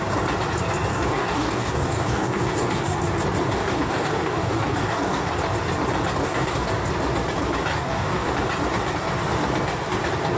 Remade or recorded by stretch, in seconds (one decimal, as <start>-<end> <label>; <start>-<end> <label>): 0.0-0.9 recorded; 0.9-3.0 remade; 3.0-3.6 recorded; 3.6-5.3 remade; 5.3-6.2 recorded; 6.2-6.7 remade; 6.7-7.7 recorded; 7.7-8.3 remade; 8.3-10.4 recorded